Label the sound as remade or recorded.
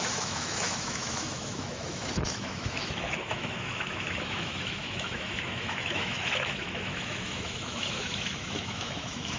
remade